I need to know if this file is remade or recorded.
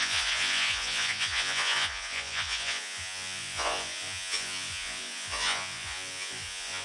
remade